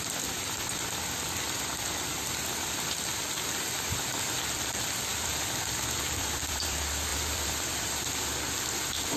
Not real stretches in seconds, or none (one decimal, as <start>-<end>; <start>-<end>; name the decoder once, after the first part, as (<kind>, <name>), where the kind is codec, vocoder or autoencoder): 5.1-6.1 (vocoder, BigVGAN v2); 7.1-9.2